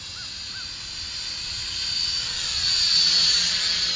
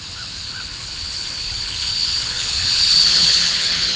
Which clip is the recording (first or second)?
first